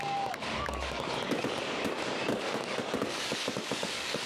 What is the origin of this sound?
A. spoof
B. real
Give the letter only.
A